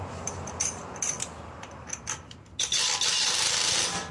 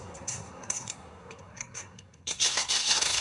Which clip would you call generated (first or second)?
second